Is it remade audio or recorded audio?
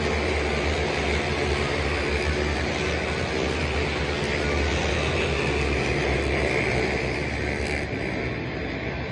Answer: recorded